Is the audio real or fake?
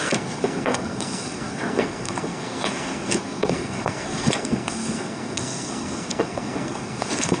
fake